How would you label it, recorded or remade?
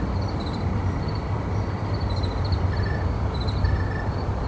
recorded